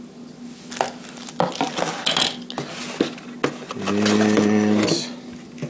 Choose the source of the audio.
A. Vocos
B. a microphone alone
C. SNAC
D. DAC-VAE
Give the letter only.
B